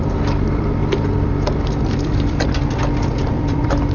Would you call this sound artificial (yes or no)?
yes